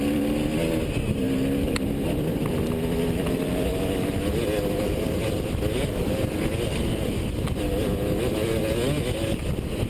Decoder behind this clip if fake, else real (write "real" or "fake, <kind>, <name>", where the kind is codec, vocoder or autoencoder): real